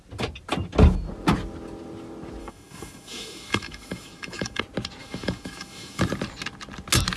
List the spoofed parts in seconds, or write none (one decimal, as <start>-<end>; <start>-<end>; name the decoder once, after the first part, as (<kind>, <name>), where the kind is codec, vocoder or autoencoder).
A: 2.4-4.6 (autoencoder, DAC-VAE); 5.0-6.0